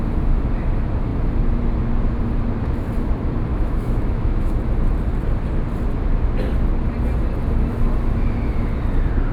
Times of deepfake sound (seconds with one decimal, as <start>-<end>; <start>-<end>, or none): 3.5-4.6